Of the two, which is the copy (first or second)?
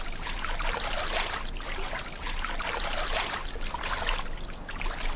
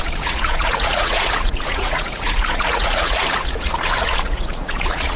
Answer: second